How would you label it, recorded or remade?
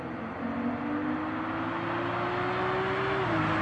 recorded